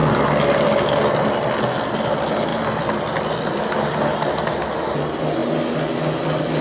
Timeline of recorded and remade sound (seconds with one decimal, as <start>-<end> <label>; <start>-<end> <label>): 0.0-6.6 recorded